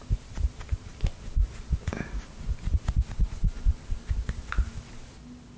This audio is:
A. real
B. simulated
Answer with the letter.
A